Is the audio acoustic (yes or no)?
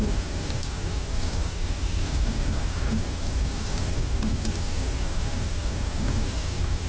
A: no